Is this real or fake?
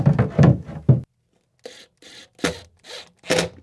real